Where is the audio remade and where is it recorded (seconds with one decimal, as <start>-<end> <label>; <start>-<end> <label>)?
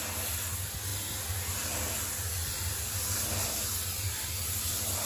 0.0-5.1 recorded